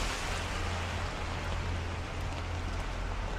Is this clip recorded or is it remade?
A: recorded